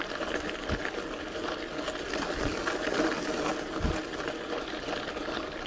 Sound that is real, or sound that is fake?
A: real